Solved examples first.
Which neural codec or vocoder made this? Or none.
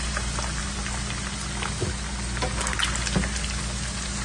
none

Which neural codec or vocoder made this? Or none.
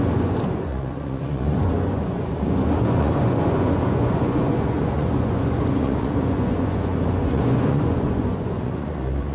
vocoder, Vocos